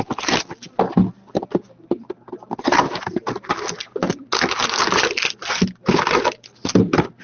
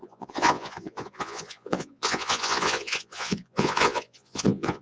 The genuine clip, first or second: first